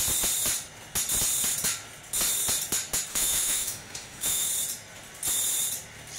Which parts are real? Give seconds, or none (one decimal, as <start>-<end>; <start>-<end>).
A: 0.0-3.1; 4.5-6.2